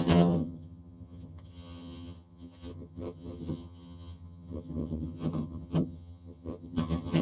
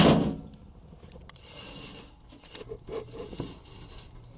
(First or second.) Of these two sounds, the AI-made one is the first